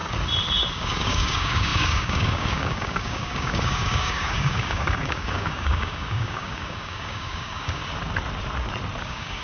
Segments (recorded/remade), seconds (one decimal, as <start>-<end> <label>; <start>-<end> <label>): 0.0-0.7 recorded; 0.7-7.8 remade; 7.8-9.0 recorded; 9.0-9.4 remade